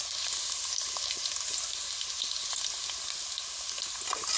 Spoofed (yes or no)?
no